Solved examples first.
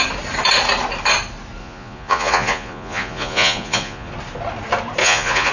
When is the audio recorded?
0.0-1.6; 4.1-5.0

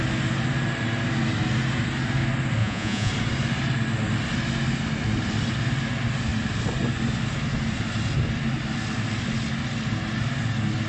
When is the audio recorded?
0.0-2.6; 3.1-10.9